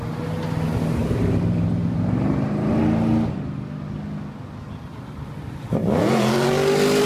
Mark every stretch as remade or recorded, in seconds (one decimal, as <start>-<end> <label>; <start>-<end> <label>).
0.0-1.0 recorded; 1.0-2.8 remade; 2.8-7.0 recorded

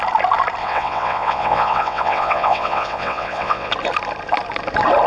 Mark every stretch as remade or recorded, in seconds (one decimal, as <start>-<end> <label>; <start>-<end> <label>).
0.0-0.6 recorded; 0.6-3.7 remade; 3.7-5.1 recorded

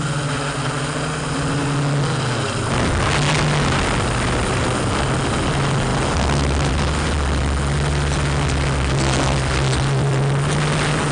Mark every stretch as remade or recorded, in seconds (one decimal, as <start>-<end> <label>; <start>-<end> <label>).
0.0-11.1 recorded

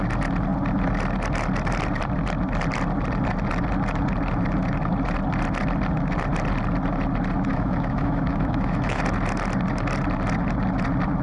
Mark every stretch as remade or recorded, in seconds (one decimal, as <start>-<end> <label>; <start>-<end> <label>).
0.0-7.5 recorded; 7.5-9.0 remade; 9.0-11.2 recorded